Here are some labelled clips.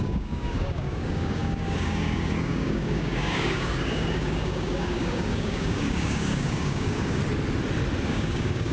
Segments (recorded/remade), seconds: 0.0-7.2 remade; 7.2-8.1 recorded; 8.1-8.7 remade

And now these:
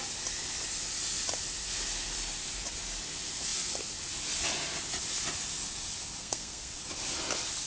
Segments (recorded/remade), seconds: 0.0-6.2 recorded; 6.2-6.8 remade; 6.8-7.7 recorded